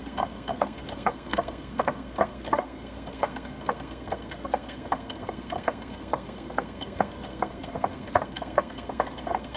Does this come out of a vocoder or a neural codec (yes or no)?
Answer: yes